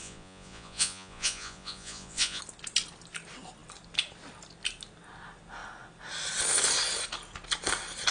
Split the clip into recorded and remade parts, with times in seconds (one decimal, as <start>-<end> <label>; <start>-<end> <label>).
0.0-2.4 remade; 2.4-8.1 recorded